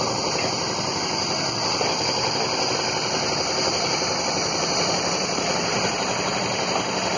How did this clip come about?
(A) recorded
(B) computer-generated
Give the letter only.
A